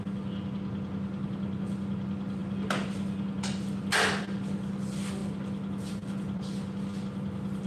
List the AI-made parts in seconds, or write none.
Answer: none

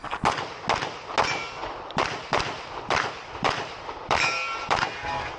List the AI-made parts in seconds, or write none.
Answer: 1.6-4.8 (vocoder, BigVGAN v2)

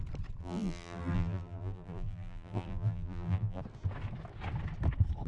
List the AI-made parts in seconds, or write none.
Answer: 0.4-3.6 (vocoder, BigVGAN v2)

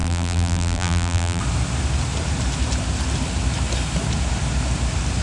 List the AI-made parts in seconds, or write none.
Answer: 0.0-1.4 (vocoder, BigVGAN v2)

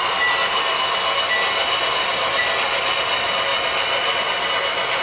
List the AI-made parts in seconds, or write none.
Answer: none

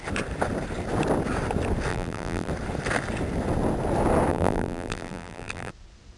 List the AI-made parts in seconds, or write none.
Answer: 1.9-2.5 (vocoder, BigVGAN v2); 4.3-5.7